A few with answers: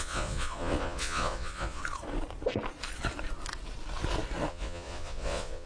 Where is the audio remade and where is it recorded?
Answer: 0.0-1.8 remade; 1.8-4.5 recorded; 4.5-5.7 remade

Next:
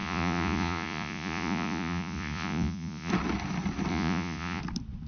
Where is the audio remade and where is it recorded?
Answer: 0.0-3.1 remade; 3.1-3.9 recorded; 3.9-4.6 remade; 4.6-5.1 recorded

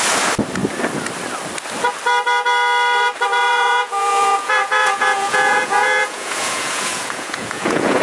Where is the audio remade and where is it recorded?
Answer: 0.0-3.5 recorded; 3.5-8.0 remade